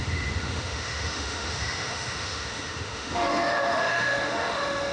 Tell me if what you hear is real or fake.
fake